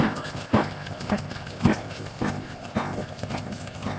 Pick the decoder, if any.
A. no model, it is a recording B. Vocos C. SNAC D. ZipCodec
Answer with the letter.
D